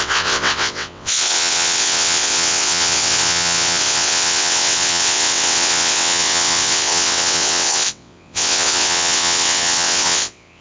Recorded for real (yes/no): no